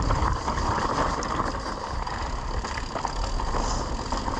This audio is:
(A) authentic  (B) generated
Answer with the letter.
A